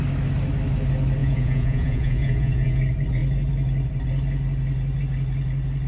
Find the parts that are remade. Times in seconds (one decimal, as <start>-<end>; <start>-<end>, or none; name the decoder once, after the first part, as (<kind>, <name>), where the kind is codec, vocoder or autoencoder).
1.2-2.8 (vocoder, Vocos)